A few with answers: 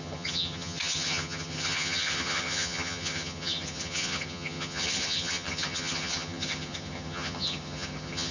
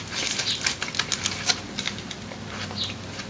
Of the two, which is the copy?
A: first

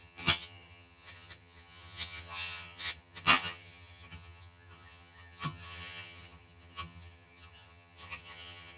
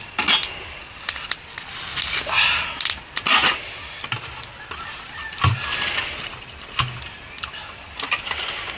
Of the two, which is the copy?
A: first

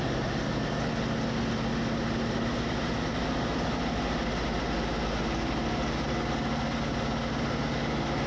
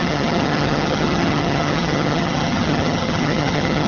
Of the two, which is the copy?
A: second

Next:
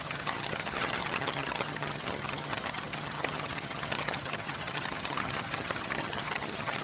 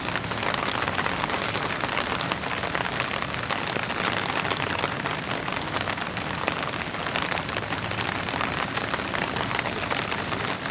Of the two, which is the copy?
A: first